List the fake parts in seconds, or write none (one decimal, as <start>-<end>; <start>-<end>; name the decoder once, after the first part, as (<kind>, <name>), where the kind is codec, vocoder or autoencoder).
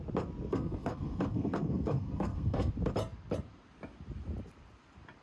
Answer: 0.5-2.7 (codec, SNAC)